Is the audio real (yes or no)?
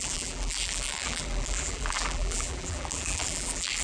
no